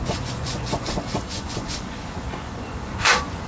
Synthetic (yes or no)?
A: yes